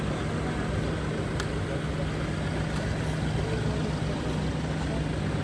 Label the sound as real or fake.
real